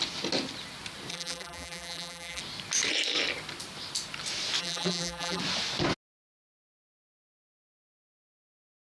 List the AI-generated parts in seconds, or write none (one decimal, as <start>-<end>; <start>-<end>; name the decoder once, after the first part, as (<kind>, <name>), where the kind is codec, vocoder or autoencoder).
1.1-2.4 (vocoder, BigVGAN v2); 4.6-5.4